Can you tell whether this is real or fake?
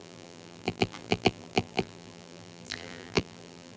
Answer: fake